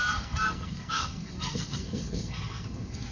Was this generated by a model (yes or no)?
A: yes